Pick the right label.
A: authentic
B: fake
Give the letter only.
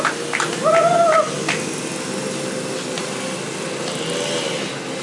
A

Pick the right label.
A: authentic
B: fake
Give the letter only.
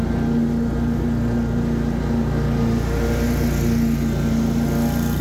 A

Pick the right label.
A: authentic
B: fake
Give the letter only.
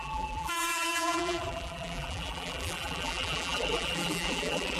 B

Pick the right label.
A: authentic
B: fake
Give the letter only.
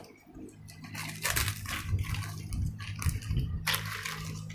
A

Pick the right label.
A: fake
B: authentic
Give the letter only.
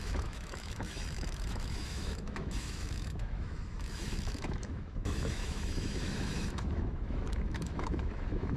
A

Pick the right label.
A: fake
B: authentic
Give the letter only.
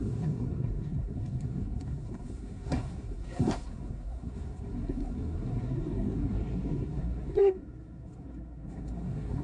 A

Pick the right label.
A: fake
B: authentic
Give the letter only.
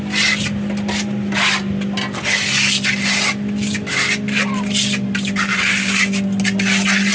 B